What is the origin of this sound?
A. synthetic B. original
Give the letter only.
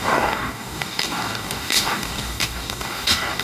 A